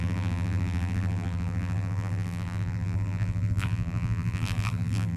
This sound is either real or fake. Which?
fake